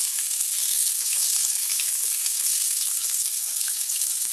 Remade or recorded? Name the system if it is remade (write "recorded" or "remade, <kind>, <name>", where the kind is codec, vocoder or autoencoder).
remade, codec, SNAC